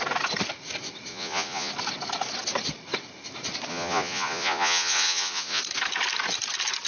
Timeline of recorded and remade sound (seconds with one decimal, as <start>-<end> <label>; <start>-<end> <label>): 0.0-1.1 recorded; 1.1-1.7 remade; 1.7-3.7 recorded; 3.7-5.6 remade; 5.6-6.9 recorded